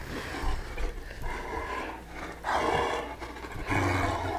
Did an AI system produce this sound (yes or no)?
no